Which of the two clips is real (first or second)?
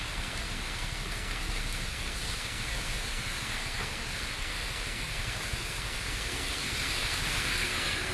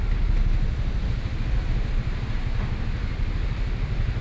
second